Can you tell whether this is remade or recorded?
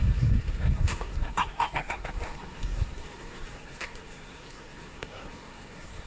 remade